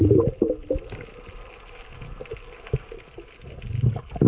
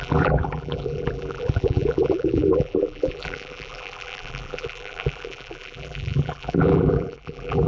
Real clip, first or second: first